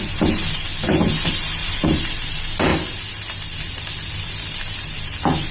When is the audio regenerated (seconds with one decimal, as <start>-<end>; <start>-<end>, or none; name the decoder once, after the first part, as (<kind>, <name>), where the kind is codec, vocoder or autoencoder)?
none